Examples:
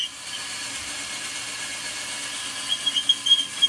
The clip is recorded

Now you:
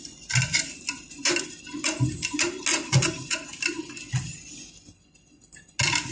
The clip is recorded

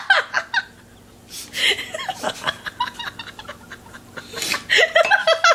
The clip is recorded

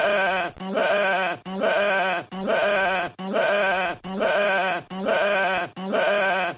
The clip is recorded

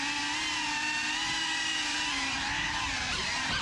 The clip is recorded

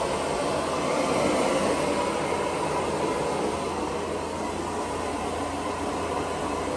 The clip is recorded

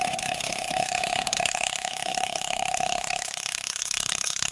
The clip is remade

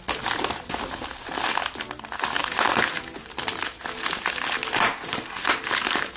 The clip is recorded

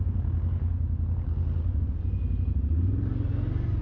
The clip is recorded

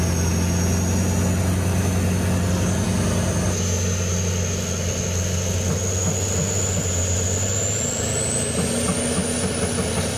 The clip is recorded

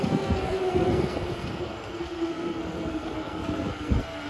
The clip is remade